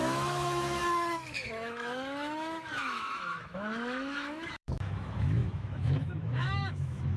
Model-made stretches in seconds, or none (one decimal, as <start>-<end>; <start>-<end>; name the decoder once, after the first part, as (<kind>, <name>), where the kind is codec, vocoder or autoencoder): 0.0-7.2 (autoencoder, DAC-VAE)